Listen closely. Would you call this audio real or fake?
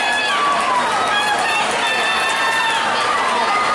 real